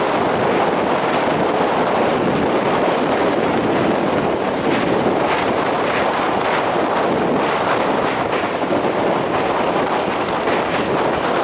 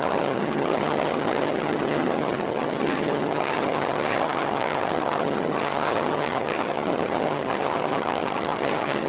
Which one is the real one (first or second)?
first